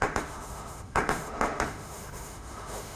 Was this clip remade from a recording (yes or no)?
yes